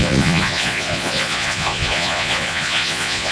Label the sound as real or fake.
fake